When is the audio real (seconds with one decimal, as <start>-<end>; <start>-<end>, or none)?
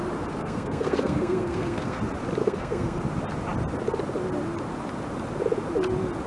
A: 0.0-0.4; 2.0-2.4; 3.0-6.3